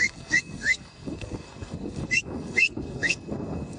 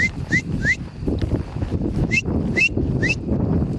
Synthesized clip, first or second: first